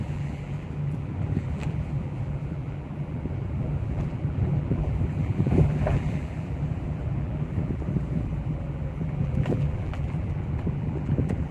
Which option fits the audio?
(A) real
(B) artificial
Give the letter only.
B